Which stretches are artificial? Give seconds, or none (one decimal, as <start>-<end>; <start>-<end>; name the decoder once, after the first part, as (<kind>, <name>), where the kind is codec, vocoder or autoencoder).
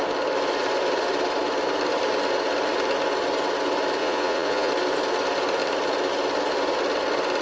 4.0-4.7 (vocoder, Vocos)